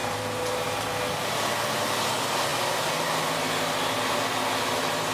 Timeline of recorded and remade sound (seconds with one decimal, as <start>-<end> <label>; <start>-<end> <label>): 0.0-0.9 remade; 0.9-5.1 recorded